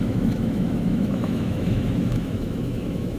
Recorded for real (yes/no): no